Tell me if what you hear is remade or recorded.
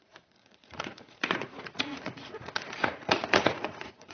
remade